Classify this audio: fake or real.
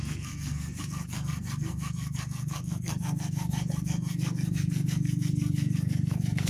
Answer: fake